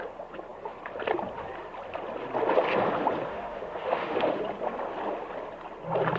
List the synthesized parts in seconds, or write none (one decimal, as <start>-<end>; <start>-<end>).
3.3-4.4